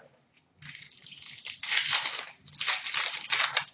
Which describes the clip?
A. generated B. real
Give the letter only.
B